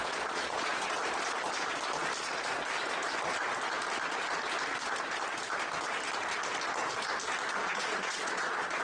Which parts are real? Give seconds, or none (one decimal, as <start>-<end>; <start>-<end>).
0.8-7.6